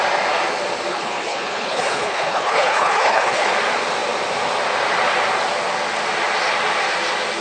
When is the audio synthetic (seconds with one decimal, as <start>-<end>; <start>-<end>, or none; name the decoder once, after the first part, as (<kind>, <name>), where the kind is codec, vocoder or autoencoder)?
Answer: 0.9-3.5 (codec, HILCodec)